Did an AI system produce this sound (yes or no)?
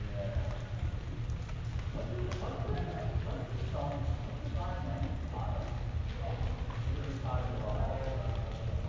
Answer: no